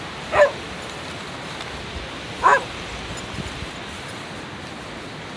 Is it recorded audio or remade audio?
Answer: recorded